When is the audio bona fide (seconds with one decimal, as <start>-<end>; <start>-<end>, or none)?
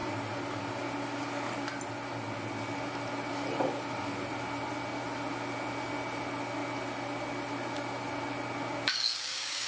0.0-8.9